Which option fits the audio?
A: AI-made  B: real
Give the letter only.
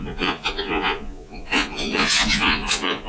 A